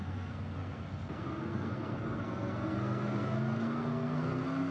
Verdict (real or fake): fake